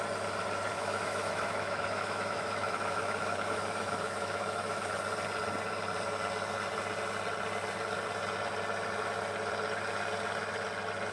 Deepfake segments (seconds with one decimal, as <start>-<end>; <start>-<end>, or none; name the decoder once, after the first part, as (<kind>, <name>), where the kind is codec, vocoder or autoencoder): 0.7-4.9 (autoencoder, DAC-VAE)